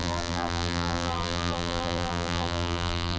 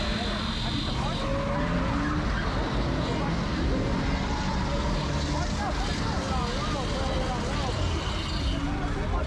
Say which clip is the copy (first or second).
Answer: first